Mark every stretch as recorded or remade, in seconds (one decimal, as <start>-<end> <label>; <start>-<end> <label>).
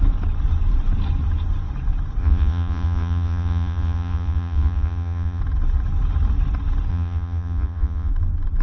0.0-2.2 recorded; 2.2-5.4 remade; 5.4-6.9 recorded; 6.9-8.1 remade; 8.1-8.6 recorded